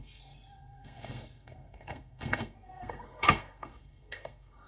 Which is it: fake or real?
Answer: fake